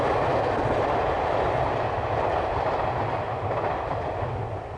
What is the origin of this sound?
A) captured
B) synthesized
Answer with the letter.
A